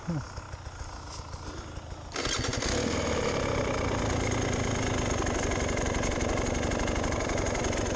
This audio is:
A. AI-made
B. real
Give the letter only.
B